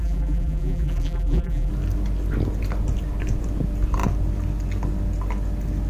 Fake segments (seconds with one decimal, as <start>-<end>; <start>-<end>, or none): 0.0-1.7